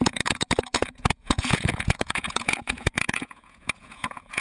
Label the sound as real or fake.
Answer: fake